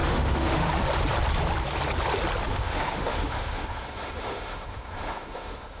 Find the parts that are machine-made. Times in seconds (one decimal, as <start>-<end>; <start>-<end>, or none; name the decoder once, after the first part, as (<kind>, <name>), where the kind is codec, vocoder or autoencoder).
0.0-0.7 (autoencoder, DAC-VAE); 2.5-5.8